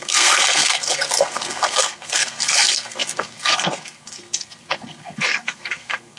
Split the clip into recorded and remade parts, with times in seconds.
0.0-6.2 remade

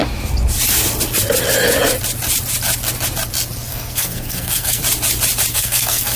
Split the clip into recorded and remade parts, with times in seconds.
0.0-3.7 recorded; 3.7-4.8 remade; 4.8-5.5 recorded; 5.5-6.2 remade